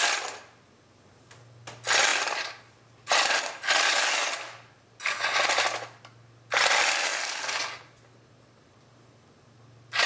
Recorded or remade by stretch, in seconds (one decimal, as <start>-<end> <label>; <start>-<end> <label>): 0.0-10.1 recorded